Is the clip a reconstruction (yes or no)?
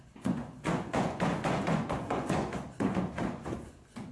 yes